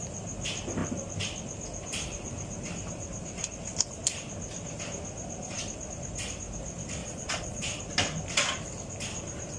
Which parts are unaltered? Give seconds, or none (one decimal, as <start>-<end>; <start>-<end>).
0.0-7.0; 7.8-9.6

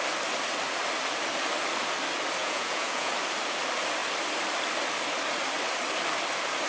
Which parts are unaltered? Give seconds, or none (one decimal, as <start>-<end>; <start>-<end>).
0.0-2.4; 3.1-6.7

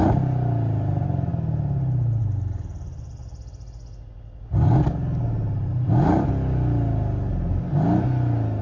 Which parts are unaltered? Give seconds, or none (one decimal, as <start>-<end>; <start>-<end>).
0.0-8.6

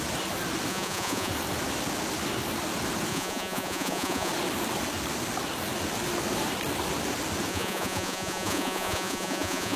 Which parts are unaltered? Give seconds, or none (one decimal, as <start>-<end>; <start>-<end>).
0.0-0.7; 1.3-3.1; 4.3-7.5

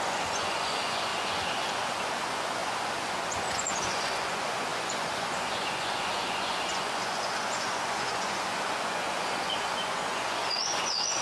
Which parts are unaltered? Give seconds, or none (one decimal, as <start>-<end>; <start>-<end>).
none

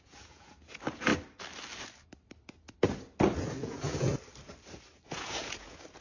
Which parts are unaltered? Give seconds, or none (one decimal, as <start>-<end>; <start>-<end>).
1.1-3.4; 4.1-5.1